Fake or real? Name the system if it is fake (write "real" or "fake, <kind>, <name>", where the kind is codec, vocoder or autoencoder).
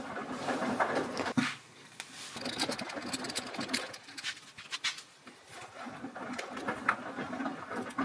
real